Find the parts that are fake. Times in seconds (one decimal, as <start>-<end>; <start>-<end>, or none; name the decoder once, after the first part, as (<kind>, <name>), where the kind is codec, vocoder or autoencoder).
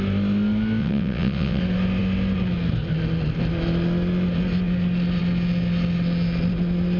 0.8-1.6 (vocoder, WaveNeXt)